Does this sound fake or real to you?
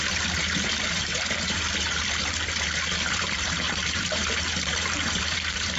fake